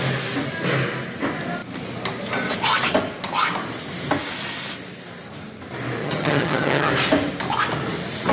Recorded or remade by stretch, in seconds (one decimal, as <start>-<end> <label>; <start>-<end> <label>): 0.0-6.0 recorded; 6.0-6.9 remade; 6.9-8.3 recorded